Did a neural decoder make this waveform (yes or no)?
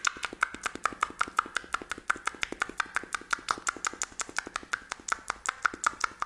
no